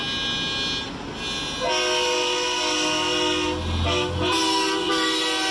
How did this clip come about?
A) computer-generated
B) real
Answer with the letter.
B